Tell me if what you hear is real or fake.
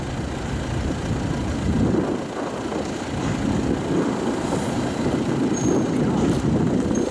real